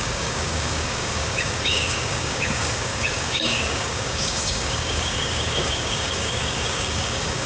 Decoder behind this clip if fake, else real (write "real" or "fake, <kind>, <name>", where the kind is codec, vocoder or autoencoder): fake, codec, DAC